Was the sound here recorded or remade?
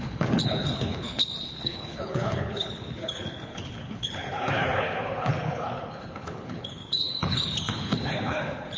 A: remade